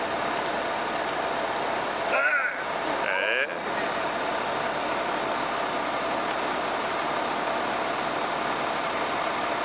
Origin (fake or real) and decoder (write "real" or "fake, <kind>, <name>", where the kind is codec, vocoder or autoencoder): real